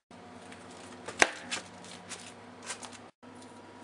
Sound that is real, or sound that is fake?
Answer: real